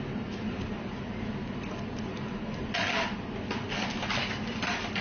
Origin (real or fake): real